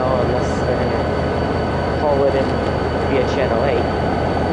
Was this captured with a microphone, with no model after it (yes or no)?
yes